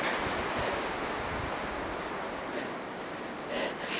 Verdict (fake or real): real